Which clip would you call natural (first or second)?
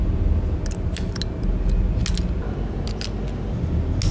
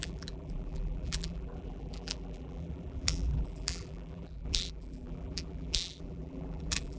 first